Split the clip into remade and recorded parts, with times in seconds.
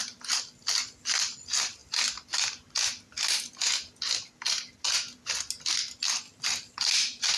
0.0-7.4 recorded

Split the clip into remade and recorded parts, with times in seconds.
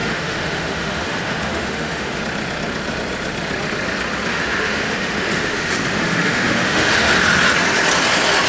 0.0-2.2 remade; 2.2-4.3 recorded; 4.3-7.1 remade; 7.1-8.5 recorded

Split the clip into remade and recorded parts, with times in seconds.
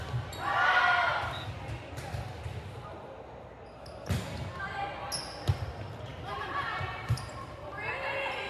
0.0-6.1 recorded; 6.1-7.5 remade; 7.5-8.5 recorded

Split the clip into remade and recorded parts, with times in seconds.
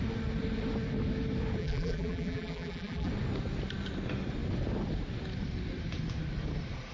0.0-1.6 recorded; 1.6-3.1 remade; 3.1-6.9 recorded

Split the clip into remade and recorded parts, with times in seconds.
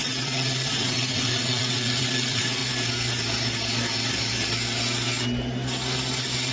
0.0-2.6 remade; 2.6-6.5 recorded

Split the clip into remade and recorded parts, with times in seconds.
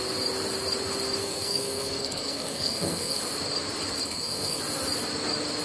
0.0-1.2 recorded; 1.2-3.2 remade; 3.2-4.0 recorded; 4.0-4.6 remade; 4.6-5.6 recorded